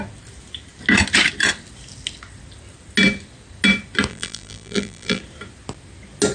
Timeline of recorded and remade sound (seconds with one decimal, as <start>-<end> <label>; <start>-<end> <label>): 0.0-4.1 recorded; 4.1-5.2 remade; 5.2-6.3 recorded